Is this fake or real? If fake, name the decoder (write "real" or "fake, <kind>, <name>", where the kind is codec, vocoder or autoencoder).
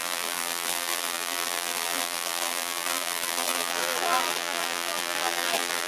fake, vocoder, BigVGAN v2